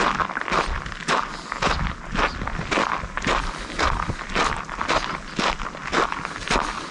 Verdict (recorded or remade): recorded